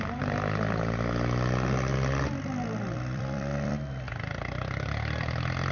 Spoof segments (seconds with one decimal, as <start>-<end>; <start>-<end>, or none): 1.9-3.9

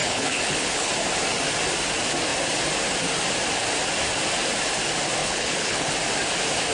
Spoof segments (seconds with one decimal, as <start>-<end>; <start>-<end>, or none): 0.0-0.9; 5.2-5.9

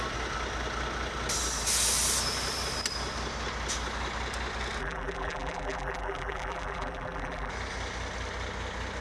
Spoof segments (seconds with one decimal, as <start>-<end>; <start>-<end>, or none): 4.8-7.5

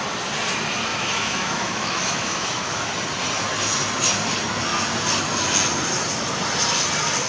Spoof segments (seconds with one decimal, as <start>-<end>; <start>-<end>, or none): 0.9-2.9

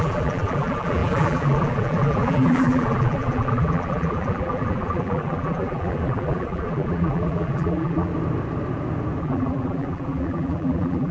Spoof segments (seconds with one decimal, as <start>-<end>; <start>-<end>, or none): 0.0-8.1; 9.2-11.1

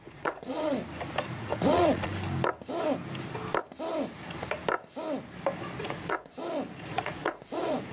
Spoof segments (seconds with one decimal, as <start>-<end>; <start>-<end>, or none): 0.0-0.7; 1.3-2.1; 5.8-6.3; 6.9-7.9

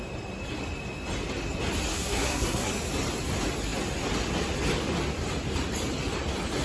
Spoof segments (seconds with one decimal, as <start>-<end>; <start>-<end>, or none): 1.9-2.7

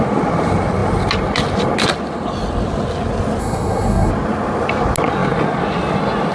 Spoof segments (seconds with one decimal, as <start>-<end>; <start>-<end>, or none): 3.4-4.1